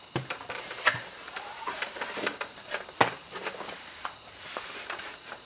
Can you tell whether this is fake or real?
fake